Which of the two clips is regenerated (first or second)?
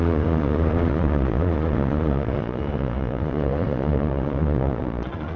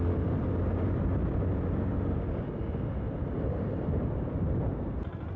first